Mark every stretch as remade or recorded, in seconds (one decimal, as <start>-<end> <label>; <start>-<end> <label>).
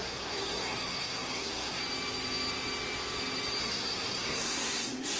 0.0-1.8 remade; 1.8-3.6 recorded; 3.6-5.2 remade